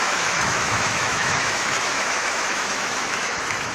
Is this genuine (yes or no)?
no